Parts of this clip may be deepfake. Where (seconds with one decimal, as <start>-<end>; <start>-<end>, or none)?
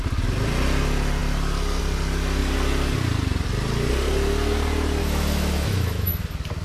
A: 5.0-6.1